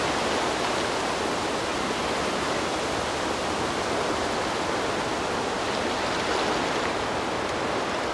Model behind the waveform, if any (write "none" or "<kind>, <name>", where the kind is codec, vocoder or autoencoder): none